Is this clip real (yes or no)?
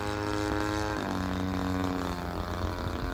yes